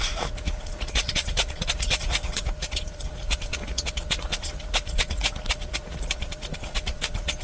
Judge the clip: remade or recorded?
remade